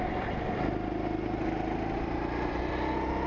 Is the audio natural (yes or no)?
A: yes